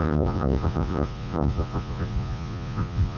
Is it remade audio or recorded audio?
remade